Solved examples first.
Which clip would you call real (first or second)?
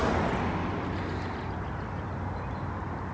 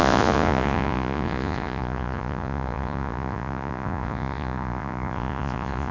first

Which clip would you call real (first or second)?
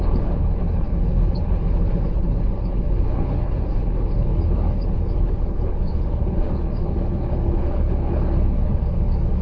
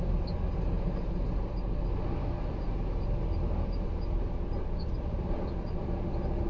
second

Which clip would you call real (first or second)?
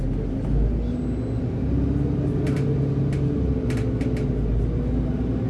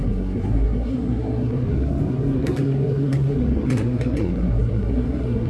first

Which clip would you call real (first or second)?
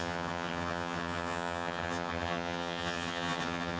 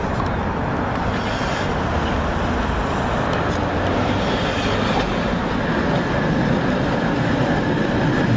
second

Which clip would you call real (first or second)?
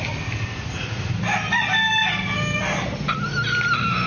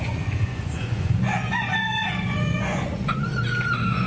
first